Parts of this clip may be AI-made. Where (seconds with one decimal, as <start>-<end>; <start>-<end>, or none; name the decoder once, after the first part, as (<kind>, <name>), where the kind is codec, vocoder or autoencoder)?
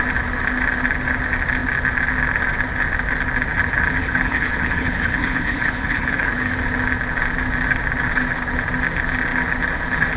4.0-6.5 (codec, HILCodec)